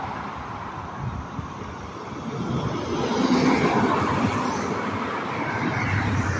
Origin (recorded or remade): remade